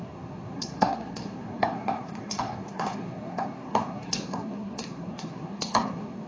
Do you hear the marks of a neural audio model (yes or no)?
yes